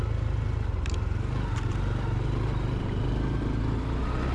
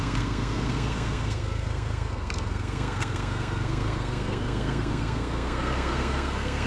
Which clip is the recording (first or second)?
first